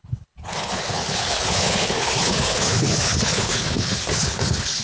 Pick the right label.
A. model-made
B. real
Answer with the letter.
A